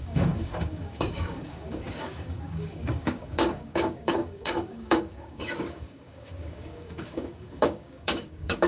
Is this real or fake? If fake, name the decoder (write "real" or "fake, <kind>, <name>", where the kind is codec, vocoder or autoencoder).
fake, codec, DAC